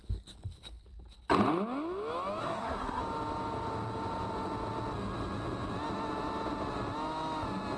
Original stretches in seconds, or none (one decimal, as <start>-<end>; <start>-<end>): 0.0-2.4; 3.0-7.8